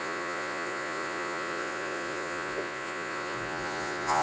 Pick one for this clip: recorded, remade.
remade